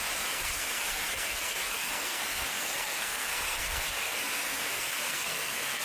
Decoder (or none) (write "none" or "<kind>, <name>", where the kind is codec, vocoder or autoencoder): codec, SNAC